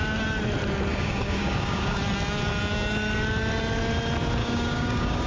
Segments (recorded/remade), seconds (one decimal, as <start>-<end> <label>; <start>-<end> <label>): 0.0-0.9 recorded; 0.9-2.0 remade; 2.0-4.4 recorded; 4.4-5.3 remade